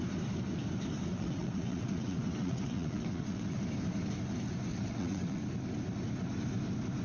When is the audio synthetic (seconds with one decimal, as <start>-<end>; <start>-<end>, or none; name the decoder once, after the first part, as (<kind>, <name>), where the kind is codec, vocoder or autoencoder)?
1.1-3.6 (vocoder, WaveNeXt); 4.7-5.4